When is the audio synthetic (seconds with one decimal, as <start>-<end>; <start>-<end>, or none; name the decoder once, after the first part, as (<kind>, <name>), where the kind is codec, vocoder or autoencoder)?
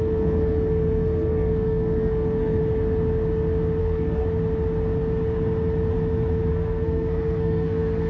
0.0-2.6 (codec, SNAC); 3.8-4.2; 6.5-8.1